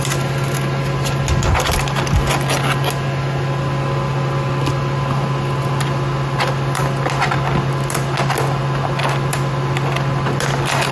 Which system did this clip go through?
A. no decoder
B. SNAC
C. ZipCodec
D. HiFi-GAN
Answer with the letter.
A